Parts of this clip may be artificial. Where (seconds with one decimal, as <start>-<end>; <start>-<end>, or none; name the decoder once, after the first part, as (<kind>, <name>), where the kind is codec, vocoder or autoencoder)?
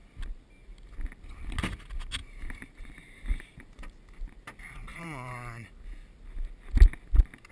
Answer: 2.2-4.0 (vocoder, BigVGAN v2); 4.9-5.8